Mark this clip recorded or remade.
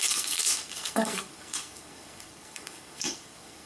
remade